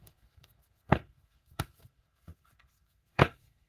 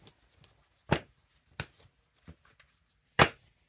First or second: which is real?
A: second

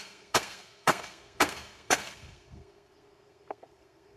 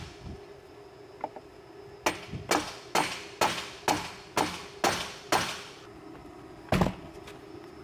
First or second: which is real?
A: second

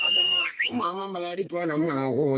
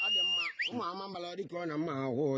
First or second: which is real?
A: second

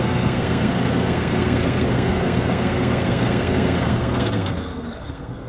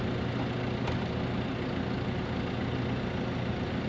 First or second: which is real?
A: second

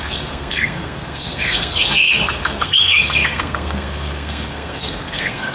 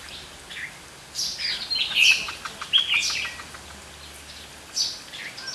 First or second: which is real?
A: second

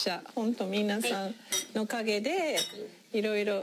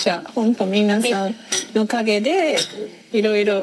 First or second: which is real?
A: first